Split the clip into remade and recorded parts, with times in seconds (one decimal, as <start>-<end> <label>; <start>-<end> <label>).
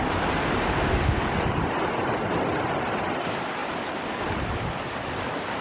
0.0-3.6 recorded; 3.6-5.6 remade